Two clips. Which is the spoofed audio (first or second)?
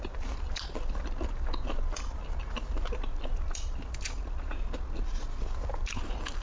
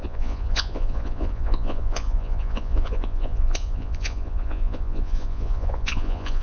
second